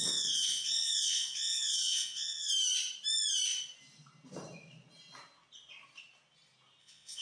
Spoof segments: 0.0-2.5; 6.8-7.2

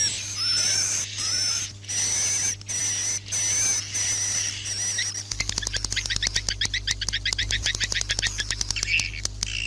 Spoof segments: 0.5-1.6

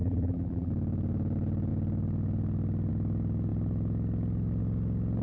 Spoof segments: 0.0-0.7

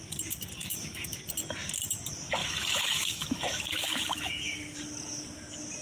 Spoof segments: 0.6-1.2; 2.4-4.8

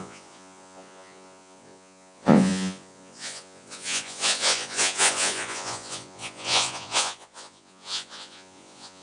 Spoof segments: 0.0-9.0